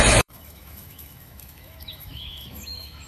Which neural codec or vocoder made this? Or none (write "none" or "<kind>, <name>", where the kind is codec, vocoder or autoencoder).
autoencoder, DAC-VAE